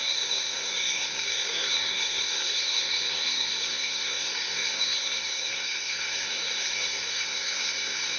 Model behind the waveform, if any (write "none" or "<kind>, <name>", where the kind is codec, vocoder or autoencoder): codec, SNAC